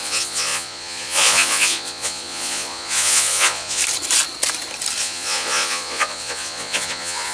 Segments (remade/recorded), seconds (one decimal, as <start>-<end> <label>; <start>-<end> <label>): 0.0-3.8 remade; 3.8-5.0 recorded; 5.0-7.3 remade